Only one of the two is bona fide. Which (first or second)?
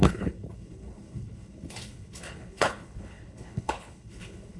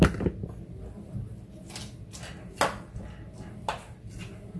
second